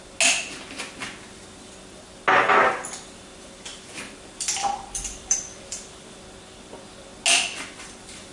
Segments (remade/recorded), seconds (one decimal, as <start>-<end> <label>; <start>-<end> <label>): 0.0-3.7 recorded; 3.7-6.2 remade; 6.2-8.3 recorded